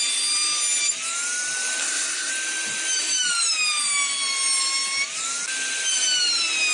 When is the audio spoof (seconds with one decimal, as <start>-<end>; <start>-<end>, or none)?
1.8-2.3